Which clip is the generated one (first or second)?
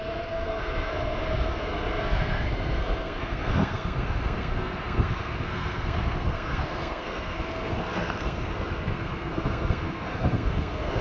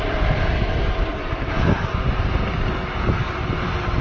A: first